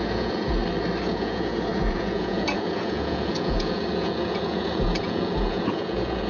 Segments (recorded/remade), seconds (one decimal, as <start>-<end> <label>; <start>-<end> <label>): 0.0-0.6 remade; 0.6-1.1 recorded; 1.1-6.3 remade